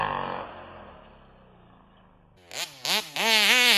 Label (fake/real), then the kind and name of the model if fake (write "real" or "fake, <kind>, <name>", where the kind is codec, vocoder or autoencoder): real